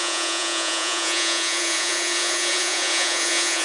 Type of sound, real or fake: fake